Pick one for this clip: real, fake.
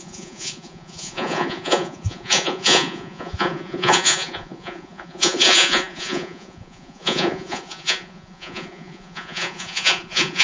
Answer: fake